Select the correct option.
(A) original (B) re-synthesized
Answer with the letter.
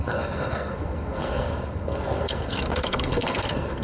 B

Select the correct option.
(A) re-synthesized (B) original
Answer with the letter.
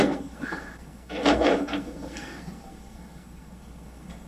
A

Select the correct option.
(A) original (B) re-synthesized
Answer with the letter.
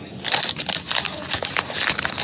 A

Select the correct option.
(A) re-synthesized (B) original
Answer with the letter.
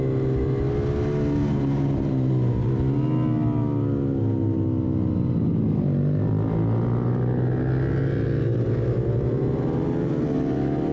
B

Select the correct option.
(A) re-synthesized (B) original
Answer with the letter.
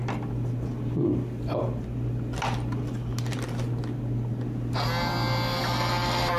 B